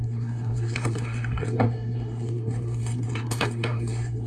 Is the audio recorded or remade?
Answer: remade